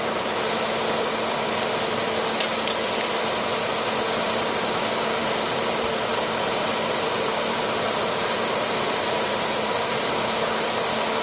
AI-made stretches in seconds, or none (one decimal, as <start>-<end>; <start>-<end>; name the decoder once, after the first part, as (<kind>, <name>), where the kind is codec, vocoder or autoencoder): 5.2-10.2 (vocoder, BigVGAN v2)